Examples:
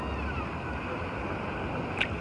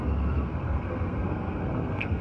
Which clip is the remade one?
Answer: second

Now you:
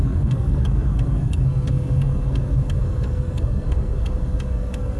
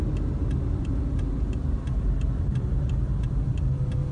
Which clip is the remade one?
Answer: first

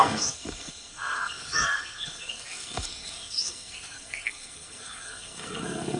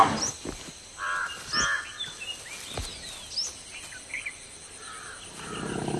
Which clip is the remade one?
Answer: first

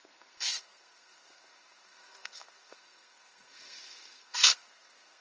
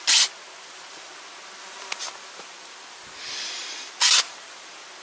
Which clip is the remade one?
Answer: first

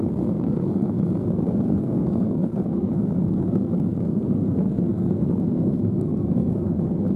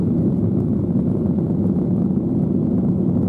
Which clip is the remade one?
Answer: first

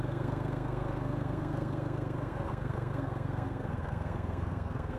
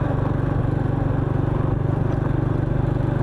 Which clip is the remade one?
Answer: first